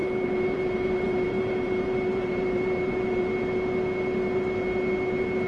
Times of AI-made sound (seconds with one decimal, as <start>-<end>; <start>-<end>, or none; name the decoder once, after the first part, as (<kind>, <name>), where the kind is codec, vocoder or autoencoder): 0.0-3.3 (vocoder, BigVGAN v2)